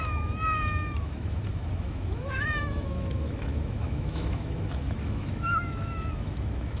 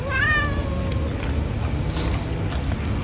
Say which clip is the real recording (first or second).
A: second